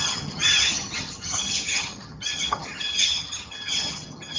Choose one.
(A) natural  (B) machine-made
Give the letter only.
B